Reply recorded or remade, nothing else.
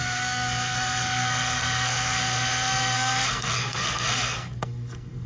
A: remade